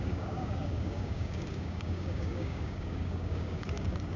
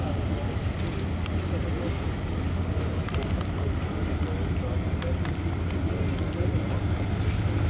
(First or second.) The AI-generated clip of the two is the first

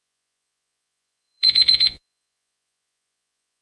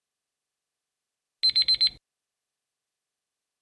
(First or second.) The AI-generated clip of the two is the first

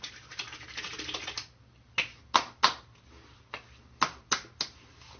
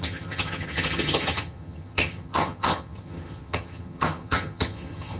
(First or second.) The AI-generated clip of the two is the second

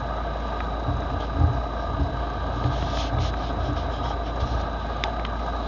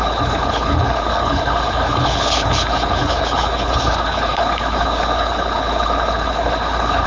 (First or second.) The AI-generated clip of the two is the second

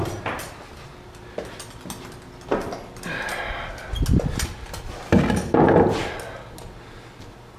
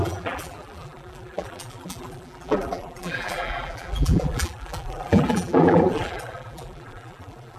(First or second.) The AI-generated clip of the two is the second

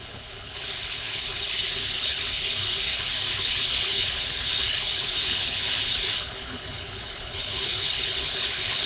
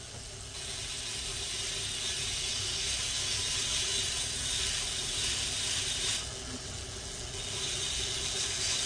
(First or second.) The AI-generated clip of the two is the first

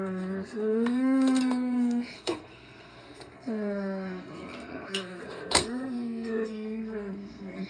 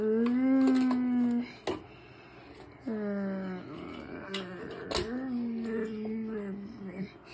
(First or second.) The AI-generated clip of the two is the first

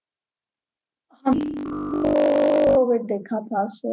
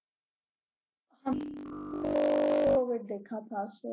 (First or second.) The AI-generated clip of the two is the first